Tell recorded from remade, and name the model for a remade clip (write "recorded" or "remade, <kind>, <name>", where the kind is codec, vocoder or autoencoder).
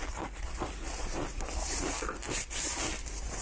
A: recorded